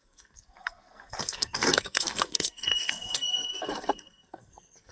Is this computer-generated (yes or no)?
yes